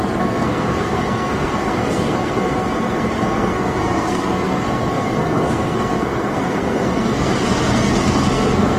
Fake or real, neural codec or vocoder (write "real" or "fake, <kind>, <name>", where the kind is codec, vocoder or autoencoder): fake, codec, SNAC